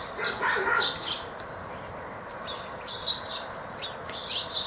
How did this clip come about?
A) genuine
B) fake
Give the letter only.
A